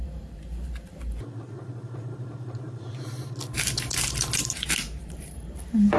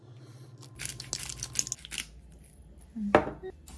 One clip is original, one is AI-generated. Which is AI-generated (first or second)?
first